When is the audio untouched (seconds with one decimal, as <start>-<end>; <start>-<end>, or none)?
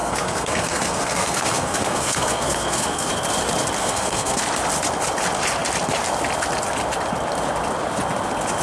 3.1-3.8; 4.4-8.6